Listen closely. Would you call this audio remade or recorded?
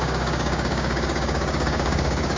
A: remade